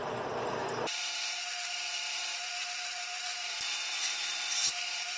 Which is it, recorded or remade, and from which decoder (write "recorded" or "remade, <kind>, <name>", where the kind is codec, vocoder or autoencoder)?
remade, vocoder, BigVGAN v2